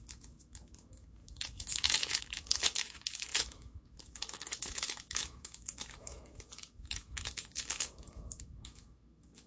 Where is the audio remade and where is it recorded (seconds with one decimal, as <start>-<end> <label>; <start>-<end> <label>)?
0.0-9.5 remade